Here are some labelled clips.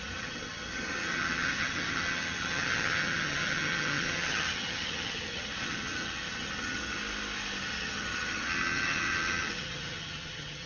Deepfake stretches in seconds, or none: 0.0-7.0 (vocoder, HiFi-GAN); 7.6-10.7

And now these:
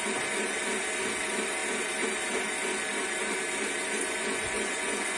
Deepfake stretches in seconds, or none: 4.2-5.2 (vocoder, Vocos)

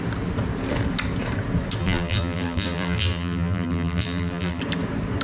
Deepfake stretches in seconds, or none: 1.8-4.6 (vocoder, BigVGAN v2)

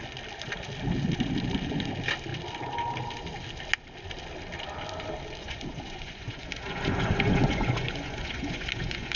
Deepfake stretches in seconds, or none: 5.4-9.2 (vocoder, Vocos)